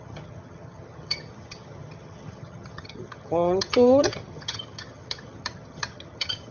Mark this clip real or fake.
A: fake